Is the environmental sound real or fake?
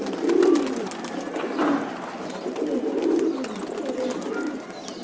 real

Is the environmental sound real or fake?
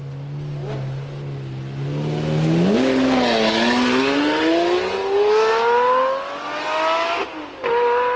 real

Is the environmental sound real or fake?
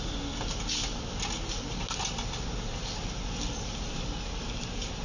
real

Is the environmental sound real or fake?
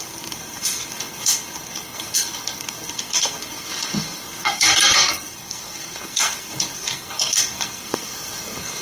fake